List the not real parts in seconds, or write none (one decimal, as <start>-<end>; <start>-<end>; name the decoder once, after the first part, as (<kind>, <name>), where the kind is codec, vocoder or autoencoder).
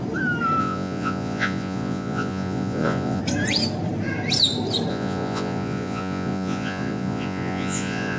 0.6-3.2 (vocoder, Vocos); 4.9-8.2